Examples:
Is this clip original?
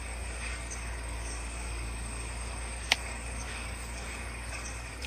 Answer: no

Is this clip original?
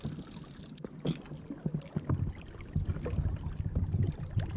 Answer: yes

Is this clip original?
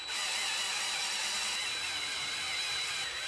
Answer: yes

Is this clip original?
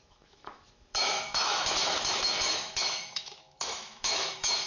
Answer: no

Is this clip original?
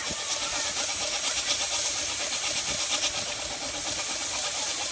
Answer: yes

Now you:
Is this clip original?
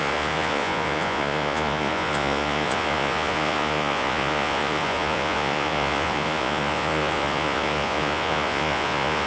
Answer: no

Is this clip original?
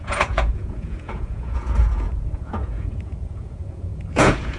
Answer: no